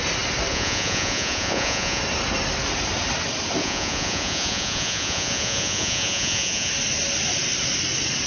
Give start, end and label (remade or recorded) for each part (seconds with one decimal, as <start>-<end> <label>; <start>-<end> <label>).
0.0-0.5 recorded; 0.5-2.0 remade; 2.0-3.6 recorded; 3.6-6.7 remade; 6.7-8.3 recorded